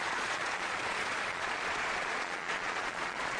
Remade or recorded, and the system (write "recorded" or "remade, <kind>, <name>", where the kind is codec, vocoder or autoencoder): remade, vocoder, Vocos